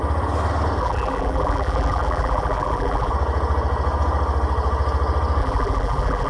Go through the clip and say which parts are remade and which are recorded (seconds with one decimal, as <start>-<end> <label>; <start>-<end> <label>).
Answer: 0.0-0.8 recorded; 0.8-3.1 remade; 3.1-5.4 recorded; 5.4-6.3 remade